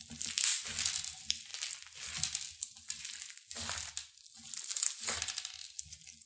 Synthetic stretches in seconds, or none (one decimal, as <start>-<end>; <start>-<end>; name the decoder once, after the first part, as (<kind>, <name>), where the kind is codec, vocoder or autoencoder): none